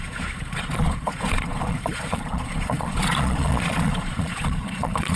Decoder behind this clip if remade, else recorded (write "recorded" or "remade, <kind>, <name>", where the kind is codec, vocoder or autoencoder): remade, vocoder, Vocos